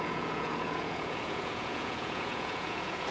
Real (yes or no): no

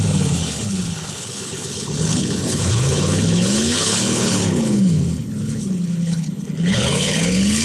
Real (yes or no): no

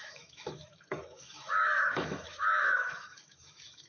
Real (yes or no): no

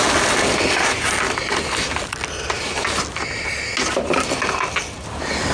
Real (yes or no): yes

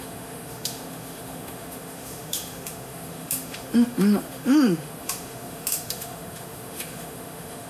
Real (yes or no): no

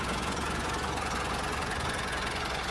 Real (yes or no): no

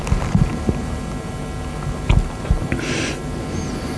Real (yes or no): yes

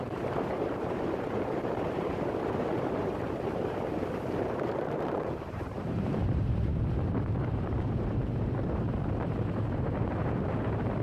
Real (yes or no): no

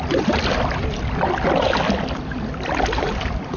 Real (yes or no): yes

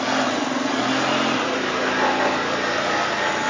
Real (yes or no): yes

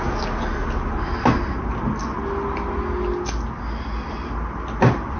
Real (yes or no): yes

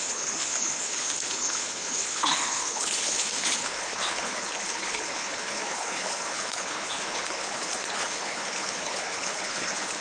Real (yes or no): no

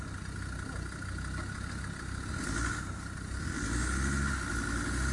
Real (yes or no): yes